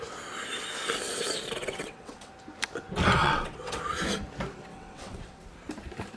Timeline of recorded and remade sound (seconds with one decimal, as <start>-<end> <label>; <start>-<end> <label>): 0.0-1.6 recorded; 1.6-2.3 remade; 2.3-3.2 recorded; 3.2-3.8 remade; 3.8-4.7 recorded; 4.7-5.4 remade; 5.4-6.2 recorded